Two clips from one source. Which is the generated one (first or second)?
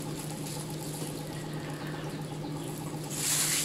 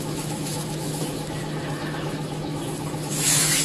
second